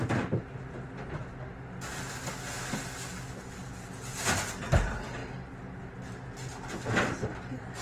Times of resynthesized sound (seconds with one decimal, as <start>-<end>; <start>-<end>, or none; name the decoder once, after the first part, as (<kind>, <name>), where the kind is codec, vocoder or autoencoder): none